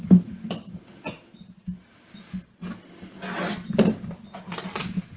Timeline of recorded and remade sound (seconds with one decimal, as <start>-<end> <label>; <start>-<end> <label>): 0.0-5.2 recorded